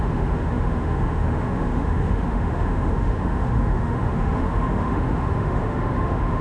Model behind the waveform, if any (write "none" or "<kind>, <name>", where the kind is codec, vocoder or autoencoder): autoencoder, DAC-VAE